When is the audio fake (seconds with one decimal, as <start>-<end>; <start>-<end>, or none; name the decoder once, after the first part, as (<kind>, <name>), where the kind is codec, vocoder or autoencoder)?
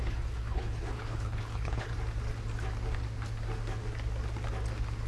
0.0-1.9 (codec, HILCodec)